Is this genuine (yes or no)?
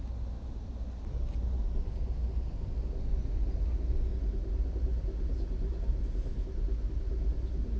yes